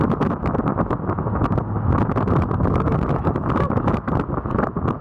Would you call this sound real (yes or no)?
yes